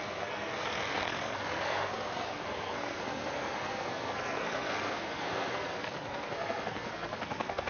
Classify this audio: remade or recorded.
remade